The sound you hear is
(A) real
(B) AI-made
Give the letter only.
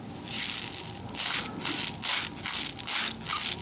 A